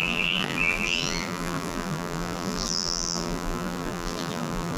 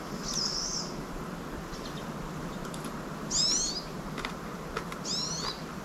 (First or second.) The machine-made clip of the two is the first